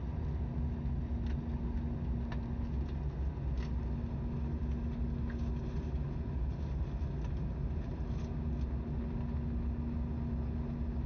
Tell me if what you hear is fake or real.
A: real